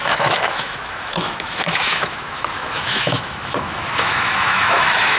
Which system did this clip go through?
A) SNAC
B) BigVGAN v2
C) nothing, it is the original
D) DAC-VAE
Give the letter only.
D